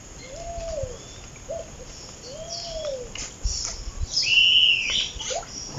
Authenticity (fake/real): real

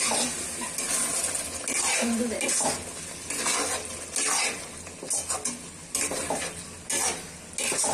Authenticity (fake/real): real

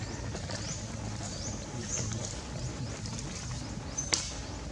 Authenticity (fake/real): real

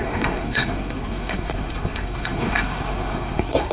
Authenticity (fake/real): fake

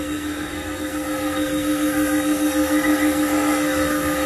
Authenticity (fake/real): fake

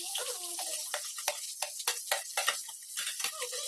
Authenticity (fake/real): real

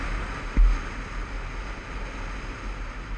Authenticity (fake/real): real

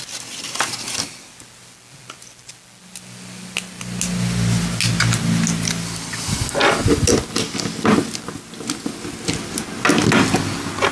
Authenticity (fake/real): real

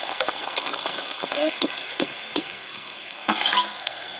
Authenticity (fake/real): fake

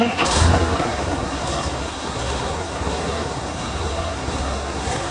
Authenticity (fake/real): fake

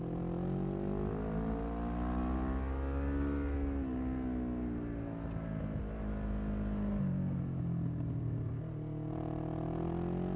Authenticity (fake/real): real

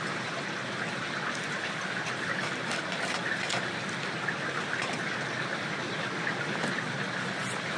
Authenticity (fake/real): real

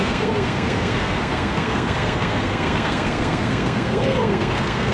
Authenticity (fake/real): fake